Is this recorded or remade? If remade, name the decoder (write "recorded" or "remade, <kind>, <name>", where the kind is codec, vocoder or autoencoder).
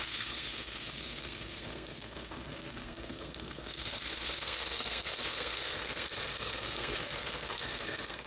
remade, codec, SNAC